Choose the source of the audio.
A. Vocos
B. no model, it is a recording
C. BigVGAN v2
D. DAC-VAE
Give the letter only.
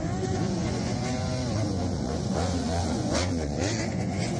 A